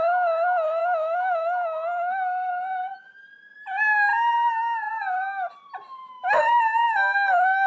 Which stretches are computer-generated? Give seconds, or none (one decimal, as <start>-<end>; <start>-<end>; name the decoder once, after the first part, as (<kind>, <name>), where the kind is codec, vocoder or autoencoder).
0.8-2.5 (autoencoder, DAC-VAE); 6.0-6.6; 7.0-7.7

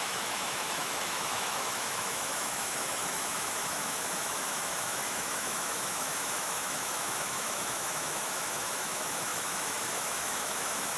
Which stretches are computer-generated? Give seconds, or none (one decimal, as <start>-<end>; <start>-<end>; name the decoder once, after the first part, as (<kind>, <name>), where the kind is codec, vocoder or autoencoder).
0.0-11.0 (autoencoder, DAC-VAE)